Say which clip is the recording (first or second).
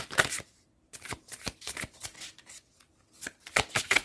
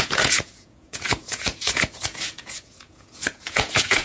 first